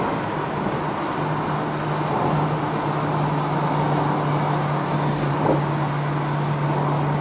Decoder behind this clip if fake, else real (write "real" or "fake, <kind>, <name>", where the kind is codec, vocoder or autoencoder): real